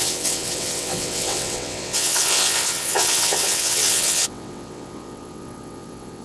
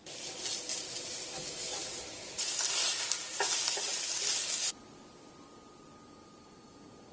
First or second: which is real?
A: second